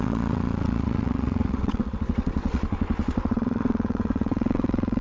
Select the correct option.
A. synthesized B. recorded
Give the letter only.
A